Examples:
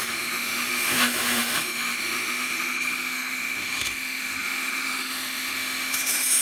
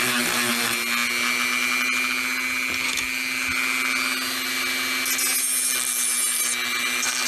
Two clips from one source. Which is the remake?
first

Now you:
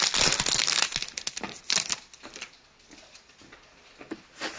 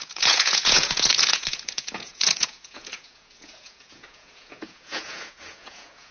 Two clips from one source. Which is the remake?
second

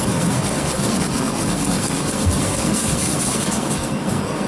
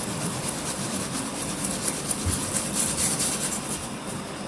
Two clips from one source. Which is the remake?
first